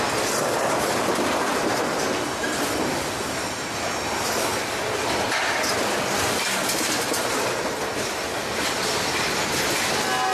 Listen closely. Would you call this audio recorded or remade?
recorded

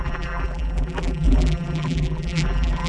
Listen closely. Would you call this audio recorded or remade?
remade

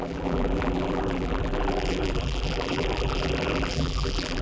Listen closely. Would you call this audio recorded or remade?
remade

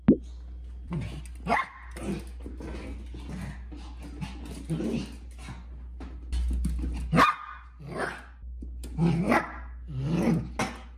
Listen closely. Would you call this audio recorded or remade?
recorded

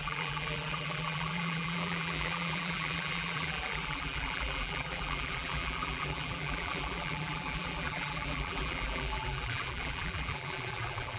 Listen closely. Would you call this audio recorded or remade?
remade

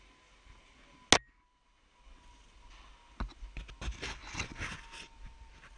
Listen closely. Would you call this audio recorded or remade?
recorded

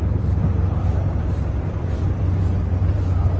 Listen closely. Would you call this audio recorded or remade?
remade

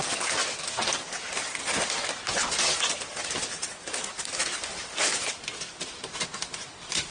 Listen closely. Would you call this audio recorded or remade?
recorded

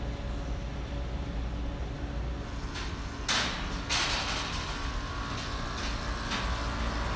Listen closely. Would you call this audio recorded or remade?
recorded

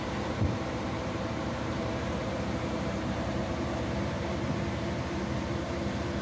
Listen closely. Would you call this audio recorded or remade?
remade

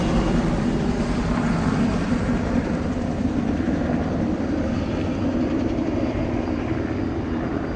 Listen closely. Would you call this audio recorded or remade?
remade